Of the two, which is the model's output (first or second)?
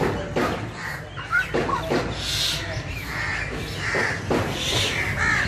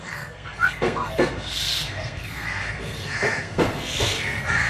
second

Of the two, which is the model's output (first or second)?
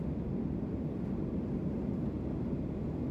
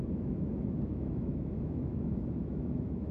second